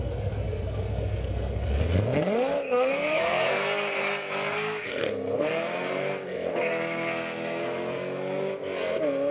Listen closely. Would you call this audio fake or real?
fake